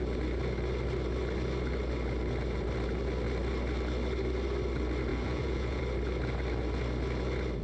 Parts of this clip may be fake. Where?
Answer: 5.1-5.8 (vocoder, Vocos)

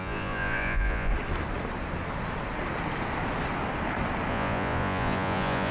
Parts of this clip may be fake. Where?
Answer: 0.0-1.1 (vocoder, Vocos); 4.3-5.7